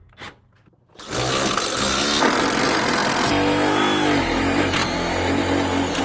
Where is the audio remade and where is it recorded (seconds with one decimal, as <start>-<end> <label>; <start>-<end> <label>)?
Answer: 0.0-6.0 recorded